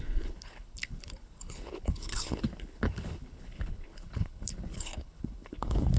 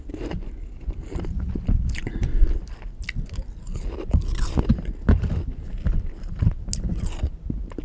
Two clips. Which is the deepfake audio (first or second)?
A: first